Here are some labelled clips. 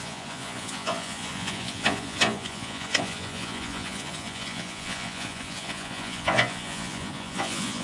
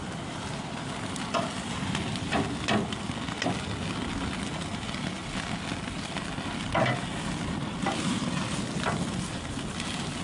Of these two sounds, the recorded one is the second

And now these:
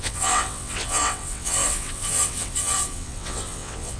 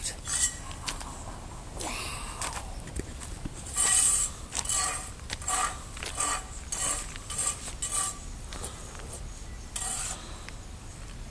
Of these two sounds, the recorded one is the second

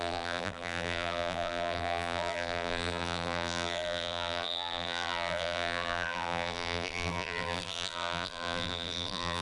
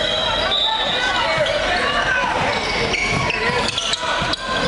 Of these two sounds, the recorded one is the second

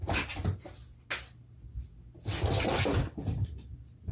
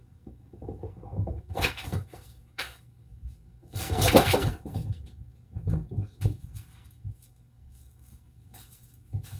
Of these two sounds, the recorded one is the first